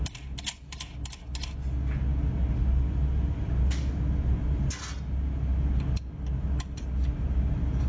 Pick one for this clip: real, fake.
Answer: real